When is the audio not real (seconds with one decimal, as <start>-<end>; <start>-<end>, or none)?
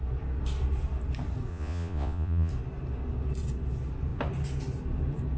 1.5-2.5